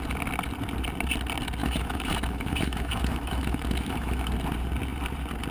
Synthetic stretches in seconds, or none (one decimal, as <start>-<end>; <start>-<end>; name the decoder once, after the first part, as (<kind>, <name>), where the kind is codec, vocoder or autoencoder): 1.6-4.3 (autoencoder, DAC-VAE)